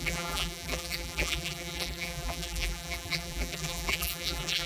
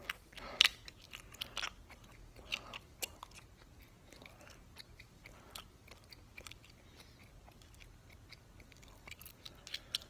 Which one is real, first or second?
second